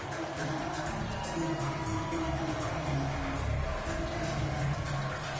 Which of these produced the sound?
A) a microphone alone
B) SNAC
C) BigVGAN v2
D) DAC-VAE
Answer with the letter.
A